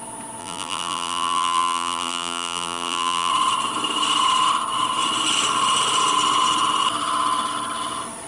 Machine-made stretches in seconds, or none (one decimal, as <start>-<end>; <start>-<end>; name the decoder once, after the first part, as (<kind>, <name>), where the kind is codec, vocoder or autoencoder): 0.4-3.3 (vocoder, BigVGAN v2)